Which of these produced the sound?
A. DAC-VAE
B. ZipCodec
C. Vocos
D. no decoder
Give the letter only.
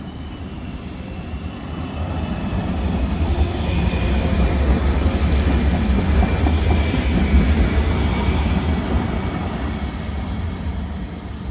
D